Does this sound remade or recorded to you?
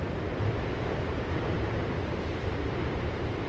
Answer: remade